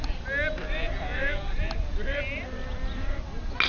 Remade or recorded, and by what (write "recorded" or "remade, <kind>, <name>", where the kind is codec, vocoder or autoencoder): recorded